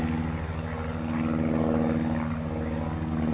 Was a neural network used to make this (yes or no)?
no